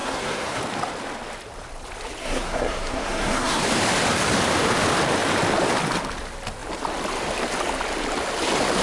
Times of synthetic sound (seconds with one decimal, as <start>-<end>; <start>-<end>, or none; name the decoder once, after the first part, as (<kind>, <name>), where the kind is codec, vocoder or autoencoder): 0.0-0.6 (codec, SNAC); 2.2-3.6